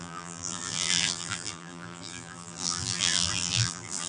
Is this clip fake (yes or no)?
yes